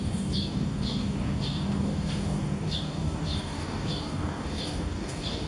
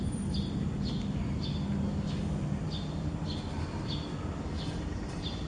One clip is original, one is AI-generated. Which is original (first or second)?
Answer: second